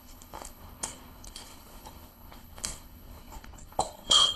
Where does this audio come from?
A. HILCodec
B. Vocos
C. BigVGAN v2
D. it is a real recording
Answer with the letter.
A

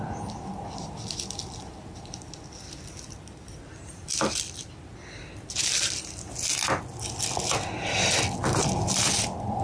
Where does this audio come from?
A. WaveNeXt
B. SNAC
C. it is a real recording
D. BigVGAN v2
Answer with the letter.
C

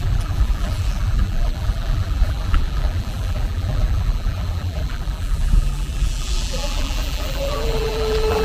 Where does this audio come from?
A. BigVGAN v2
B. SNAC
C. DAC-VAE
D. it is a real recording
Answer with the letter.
A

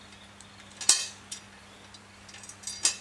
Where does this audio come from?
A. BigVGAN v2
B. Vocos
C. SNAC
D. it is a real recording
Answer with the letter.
D